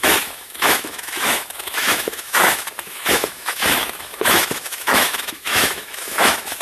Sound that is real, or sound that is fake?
fake